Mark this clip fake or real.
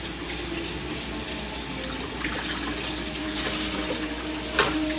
real